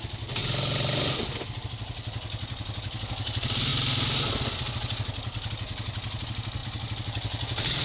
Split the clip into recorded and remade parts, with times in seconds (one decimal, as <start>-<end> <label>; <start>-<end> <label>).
0.0-7.8 recorded